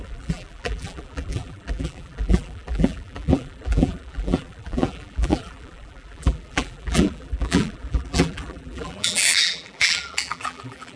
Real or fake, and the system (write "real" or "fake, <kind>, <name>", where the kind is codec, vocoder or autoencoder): fake, vocoder, BigVGAN v2